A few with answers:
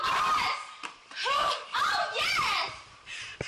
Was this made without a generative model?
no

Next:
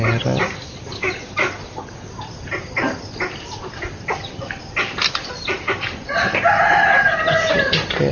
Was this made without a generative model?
yes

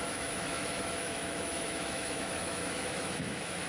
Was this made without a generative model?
no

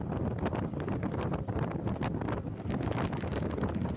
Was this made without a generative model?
yes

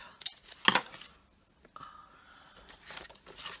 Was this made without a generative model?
yes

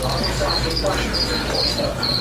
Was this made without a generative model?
yes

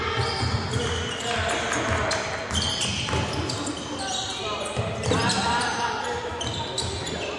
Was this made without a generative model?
yes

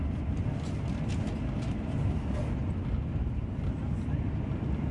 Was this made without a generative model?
yes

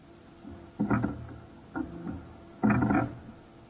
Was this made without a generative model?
yes